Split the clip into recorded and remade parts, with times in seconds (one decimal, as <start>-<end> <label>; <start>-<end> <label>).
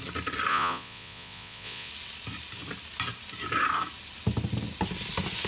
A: 0.0-0.5 recorded; 0.5-1.9 remade; 1.9-5.5 recorded